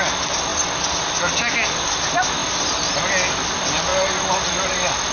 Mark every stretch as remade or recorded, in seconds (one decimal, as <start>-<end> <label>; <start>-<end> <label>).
0.0-5.1 recorded